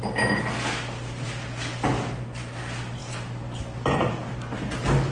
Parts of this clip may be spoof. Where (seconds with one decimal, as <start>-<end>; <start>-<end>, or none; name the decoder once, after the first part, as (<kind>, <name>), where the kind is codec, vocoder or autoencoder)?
none